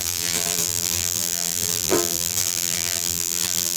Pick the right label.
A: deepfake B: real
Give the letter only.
A